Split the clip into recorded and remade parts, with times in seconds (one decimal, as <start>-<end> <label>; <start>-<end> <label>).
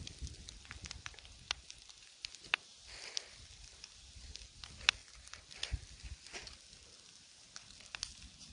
0.0-5.0 recorded; 5.0-5.9 remade; 5.9-8.5 recorded